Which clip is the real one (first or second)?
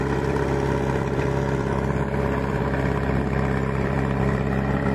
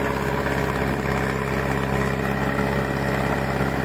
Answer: second